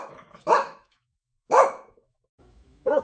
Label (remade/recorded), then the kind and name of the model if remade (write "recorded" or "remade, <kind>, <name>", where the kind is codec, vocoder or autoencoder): remade, autoencoder, DAC-VAE